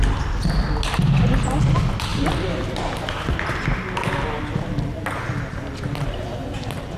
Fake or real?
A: real